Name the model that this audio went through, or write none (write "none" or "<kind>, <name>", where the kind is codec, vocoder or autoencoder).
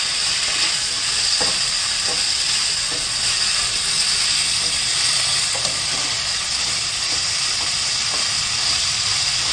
none